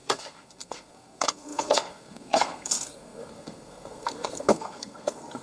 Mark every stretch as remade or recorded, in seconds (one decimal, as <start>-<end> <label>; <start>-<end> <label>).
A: 0.0-5.4 remade